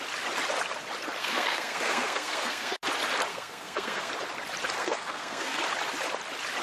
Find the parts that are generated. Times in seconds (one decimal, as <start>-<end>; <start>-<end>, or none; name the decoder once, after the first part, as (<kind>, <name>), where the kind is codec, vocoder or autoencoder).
1.2-2.9 (codec, SNAC); 3.3-4.1; 4.8-5.6